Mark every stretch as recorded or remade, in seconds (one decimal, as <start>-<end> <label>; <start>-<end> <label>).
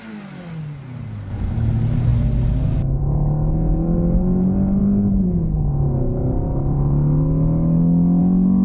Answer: 0.0-8.6 recorded